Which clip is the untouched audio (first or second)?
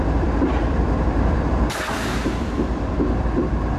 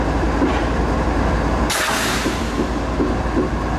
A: second